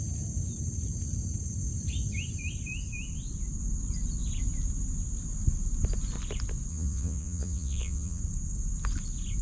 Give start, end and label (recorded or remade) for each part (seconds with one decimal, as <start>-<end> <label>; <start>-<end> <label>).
0.0-6.7 recorded; 6.7-8.2 remade; 8.2-9.4 recorded